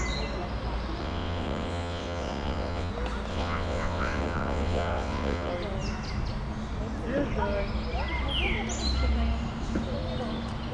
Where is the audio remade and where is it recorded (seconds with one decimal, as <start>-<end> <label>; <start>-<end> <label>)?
0.0-1.0 recorded; 1.0-2.9 remade; 2.9-3.3 recorded; 3.3-5.5 remade; 5.5-10.7 recorded